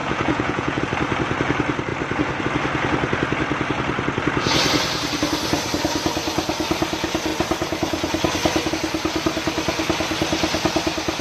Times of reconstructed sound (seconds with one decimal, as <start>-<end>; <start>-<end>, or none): 0.0-0.8